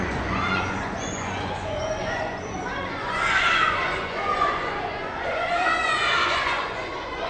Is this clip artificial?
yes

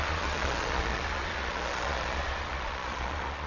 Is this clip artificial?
yes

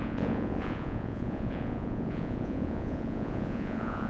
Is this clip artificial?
yes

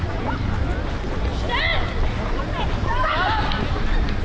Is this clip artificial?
no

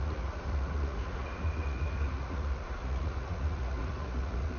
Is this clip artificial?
yes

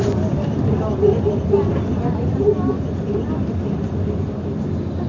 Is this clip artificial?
no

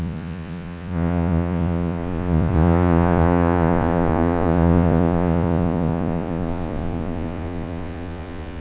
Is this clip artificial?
yes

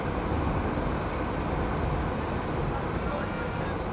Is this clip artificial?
no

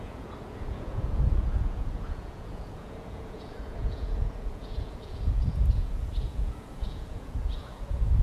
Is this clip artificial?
yes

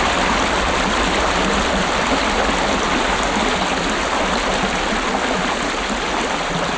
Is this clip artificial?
no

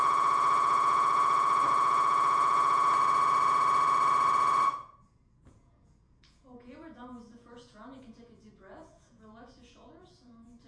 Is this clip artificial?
yes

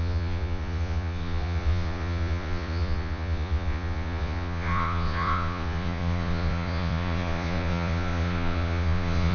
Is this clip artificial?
yes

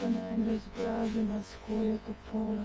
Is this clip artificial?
yes